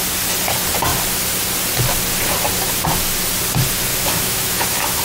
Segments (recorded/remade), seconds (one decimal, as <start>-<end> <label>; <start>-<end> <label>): 0.0-3.9 recorded; 3.9-5.0 remade